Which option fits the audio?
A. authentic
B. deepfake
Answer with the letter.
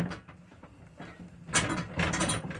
A